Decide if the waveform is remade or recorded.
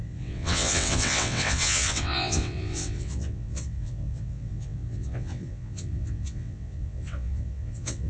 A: remade